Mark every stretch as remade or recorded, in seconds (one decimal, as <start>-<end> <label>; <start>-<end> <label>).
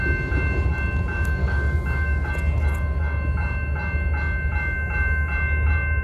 0.0-1.4 recorded; 1.4-2.3 remade; 2.3-6.0 recorded